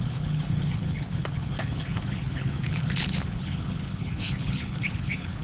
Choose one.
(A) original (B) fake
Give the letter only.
B